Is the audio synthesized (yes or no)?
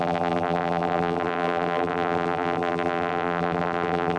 yes